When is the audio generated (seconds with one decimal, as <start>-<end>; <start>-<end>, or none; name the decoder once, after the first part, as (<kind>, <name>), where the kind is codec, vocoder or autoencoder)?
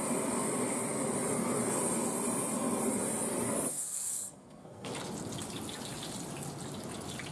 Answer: 3.7-4.9 (codec, SNAC)